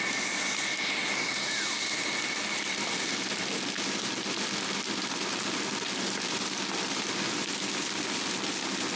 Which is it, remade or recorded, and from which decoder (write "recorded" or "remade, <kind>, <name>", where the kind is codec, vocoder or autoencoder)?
recorded